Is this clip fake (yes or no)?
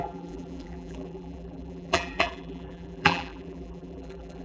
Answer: yes